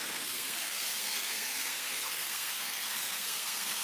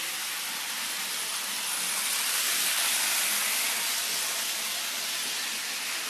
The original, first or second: second